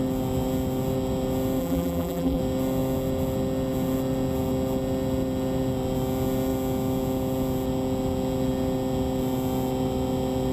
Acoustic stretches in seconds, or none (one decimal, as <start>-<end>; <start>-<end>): 0.0-1.6; 2.4-10.5